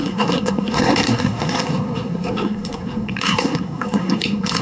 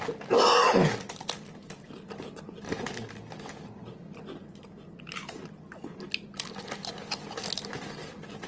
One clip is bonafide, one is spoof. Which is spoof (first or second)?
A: first